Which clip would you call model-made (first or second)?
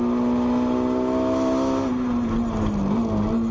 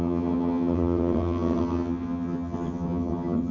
second